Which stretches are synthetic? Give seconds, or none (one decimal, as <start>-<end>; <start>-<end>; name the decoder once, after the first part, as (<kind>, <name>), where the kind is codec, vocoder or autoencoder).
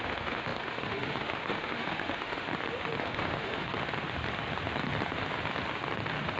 0.0-2.5 (autoencoder, DAC-VAE); 3.0-3.7